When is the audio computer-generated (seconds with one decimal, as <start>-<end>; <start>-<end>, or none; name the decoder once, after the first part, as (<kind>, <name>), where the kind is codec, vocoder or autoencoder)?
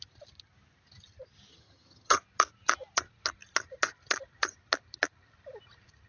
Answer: 1.5-2.2 (vocoder, HiFi-GAN)